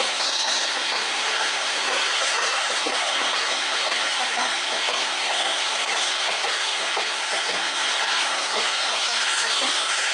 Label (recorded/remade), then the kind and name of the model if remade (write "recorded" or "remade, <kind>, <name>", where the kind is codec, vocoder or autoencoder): remade, codec, SNAC